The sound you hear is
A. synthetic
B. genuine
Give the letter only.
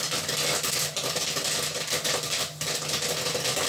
B